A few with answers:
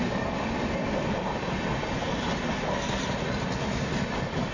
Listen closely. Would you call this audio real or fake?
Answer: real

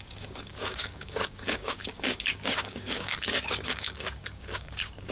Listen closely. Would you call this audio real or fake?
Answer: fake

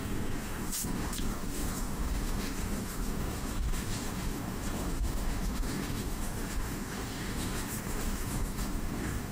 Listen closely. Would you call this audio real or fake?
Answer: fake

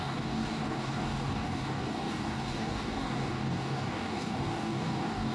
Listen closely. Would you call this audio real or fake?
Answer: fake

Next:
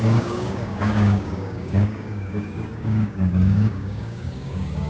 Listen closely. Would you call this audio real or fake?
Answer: fake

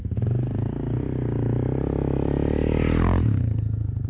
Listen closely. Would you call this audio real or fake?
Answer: real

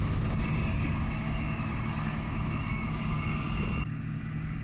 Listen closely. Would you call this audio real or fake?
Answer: fake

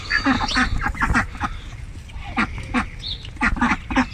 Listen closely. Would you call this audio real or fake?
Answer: real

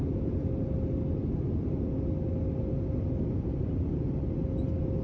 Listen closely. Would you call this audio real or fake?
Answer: real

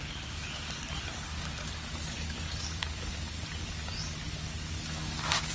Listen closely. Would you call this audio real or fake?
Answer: fake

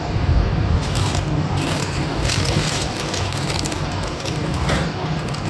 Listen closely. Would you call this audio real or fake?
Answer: fake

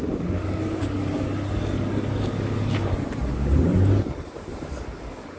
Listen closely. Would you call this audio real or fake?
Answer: fake